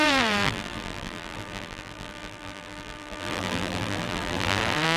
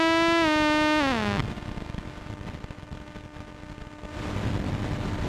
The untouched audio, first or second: second